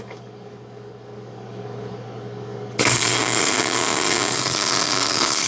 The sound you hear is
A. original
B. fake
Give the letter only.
B